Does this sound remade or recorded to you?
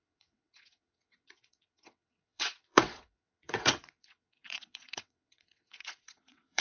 remade